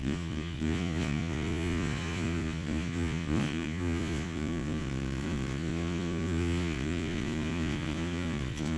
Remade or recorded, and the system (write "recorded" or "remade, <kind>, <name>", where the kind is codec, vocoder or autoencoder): remade, vocoder, Vocos